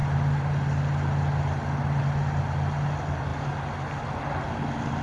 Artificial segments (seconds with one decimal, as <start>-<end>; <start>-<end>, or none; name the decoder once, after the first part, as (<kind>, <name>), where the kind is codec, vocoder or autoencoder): none